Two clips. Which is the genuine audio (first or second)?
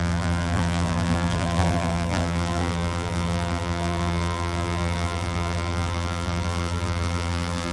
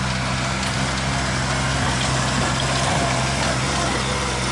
second